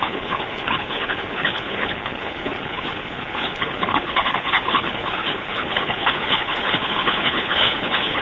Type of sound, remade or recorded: remade